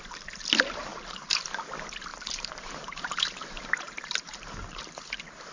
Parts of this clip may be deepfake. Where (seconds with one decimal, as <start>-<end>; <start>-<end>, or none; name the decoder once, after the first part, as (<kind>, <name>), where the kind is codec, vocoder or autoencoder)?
0.9-1.4 (vocoder, BigVGAN v2); 2.1-5.5